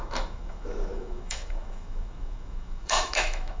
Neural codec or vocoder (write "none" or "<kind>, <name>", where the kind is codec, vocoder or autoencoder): autoencoder, DAC-VAE